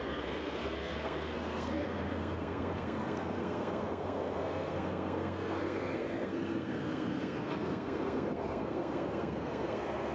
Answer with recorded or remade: remade